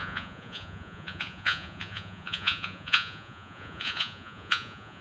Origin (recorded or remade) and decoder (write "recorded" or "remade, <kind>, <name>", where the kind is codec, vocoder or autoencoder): remade, vocoder, Vocos